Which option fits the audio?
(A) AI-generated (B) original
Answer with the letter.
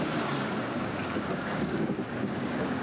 A